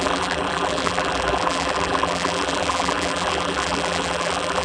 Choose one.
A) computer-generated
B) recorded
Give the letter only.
A